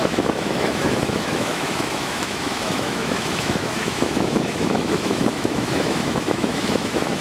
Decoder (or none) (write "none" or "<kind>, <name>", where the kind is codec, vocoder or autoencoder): autoencoder, DAC-VAE